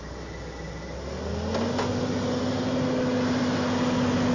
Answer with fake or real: real